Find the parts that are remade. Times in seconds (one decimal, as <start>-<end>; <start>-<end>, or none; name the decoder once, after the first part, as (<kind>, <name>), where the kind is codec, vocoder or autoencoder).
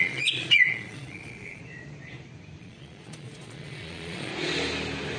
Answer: 0.0-1.6 (vocoder, Vocos); 2.6-4.3